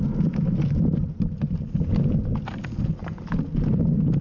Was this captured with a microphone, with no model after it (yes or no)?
yes